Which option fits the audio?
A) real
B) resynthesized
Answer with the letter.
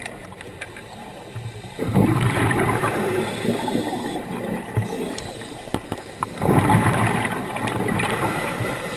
B